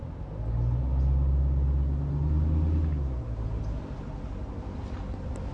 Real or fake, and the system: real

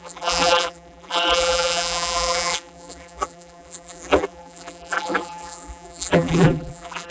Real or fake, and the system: fake, vocoder, BigVGAN v2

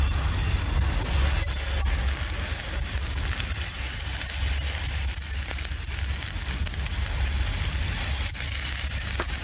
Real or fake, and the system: real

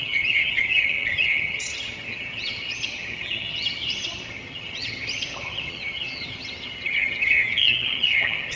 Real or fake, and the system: fake, vocoder, HiFi-GAN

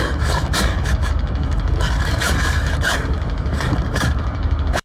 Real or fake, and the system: fake, codec, DAC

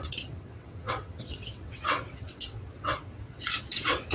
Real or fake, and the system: fake, vocoder, WaveNeXt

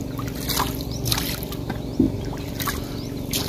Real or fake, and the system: real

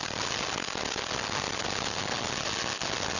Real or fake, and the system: real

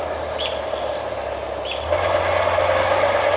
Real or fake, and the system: real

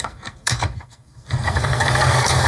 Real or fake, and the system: fake, codec, SNAC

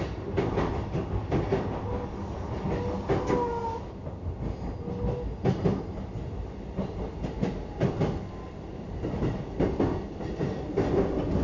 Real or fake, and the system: real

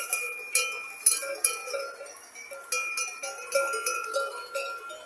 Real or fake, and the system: real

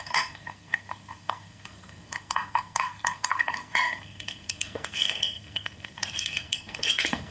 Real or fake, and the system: fake, codec, SNAC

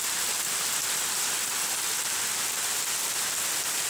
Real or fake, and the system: real